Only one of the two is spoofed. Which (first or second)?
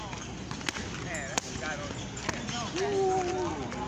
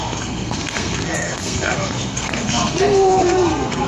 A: second